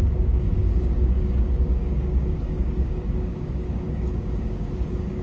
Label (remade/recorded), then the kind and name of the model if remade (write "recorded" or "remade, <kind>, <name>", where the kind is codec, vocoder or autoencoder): remade, codec, DAC